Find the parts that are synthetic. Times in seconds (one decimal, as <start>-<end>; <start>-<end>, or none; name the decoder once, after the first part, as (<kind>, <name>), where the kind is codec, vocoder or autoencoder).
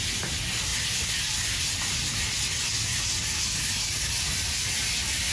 none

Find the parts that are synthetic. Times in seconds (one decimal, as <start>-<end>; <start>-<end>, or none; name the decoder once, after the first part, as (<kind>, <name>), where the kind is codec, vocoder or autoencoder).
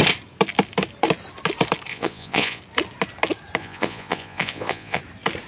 1.9-2.6 (vocoder, Vocos); 3.6-5.0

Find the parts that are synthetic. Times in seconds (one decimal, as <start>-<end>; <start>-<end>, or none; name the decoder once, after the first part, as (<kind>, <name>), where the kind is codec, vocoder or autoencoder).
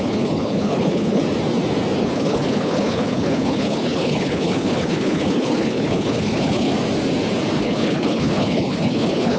0.0-1.2 (codec, HILCodec); 2.0-6.7; 7.6-9.4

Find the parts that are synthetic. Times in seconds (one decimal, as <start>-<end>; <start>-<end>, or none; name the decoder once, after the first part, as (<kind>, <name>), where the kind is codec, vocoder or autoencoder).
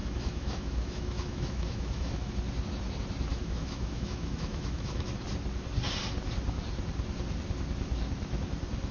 0.0-2.3 (autoencoder, DAC-VAE); 3.3-5.1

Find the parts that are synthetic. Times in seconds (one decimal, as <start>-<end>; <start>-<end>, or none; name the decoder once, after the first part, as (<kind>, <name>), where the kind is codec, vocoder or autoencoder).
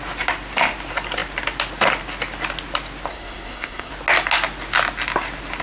3.1-3.9 (codec, SNAC)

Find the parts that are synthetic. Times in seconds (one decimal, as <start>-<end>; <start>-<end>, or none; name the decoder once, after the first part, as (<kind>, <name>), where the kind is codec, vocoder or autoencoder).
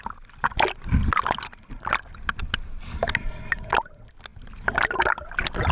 none